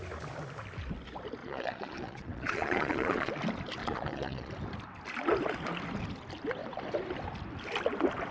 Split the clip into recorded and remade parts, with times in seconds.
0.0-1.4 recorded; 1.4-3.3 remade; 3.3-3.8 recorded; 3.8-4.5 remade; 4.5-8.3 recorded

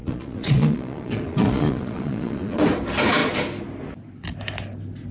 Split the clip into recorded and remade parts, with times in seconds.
0.0-2.6 remade; 2.6-5.1 recorded

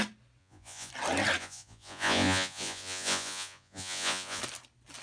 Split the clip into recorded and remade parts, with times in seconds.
0.0-0.4 recorded; 0.4-0.9 remade; 0.9-1.4 recorded; 1.4-4.4 remade; 4.4-5.0 recorded